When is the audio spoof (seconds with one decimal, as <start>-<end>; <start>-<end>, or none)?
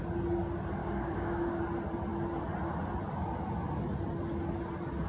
0.8-1.6